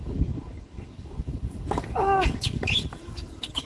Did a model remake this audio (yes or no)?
yes